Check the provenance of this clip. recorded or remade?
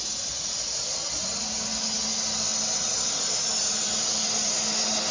recorded